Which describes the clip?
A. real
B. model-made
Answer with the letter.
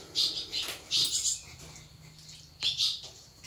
A